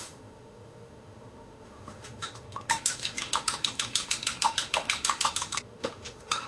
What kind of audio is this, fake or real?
fake